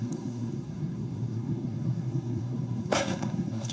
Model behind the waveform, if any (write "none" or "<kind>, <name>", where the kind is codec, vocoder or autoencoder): codec, SNAC